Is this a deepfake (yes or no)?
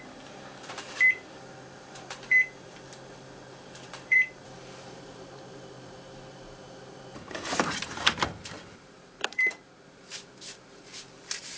yes